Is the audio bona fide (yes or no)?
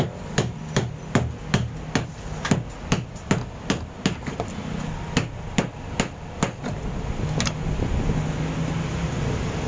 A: yes